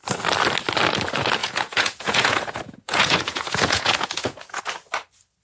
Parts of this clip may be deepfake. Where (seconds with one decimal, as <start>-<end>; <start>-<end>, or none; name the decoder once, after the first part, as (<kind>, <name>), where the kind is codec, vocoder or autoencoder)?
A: 1.4-4.6 (vocoder, Vocos)

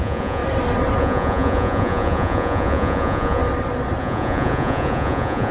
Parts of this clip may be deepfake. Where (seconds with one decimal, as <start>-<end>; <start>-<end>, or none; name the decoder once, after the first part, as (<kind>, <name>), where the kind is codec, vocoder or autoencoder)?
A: 0.0-0.4 (vocoder, Vocos); 1.0-3.4; 4.0-5.5

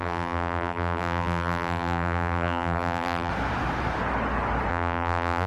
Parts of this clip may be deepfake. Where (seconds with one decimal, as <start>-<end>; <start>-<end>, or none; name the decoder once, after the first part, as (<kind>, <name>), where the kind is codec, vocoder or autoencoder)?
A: 0.0-3.3 (vocoder, BigVGAN v2); 4.7-5.5

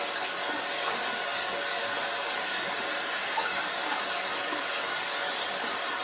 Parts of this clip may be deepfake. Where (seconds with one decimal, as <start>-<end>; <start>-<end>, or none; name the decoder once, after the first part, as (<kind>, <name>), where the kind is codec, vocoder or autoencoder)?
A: 0.4-2.7 (codec, DAC); 3.2-6.0

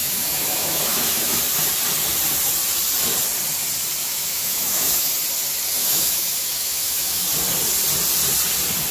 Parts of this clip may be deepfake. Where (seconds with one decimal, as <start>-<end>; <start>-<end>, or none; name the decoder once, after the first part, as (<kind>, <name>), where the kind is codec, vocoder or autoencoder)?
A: 0.0-1.4 (autoencoder, DAC-VAE); 4.0-5.1; 5.8-7.3

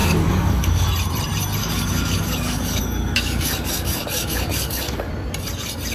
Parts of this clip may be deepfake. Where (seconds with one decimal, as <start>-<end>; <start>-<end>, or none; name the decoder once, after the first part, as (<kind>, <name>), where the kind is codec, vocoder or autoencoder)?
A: 0.0-0.9 (codec, DAC); 1.6-5.1